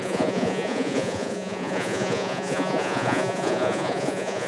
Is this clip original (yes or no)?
no